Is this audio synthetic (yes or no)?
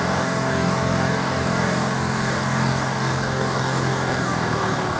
yes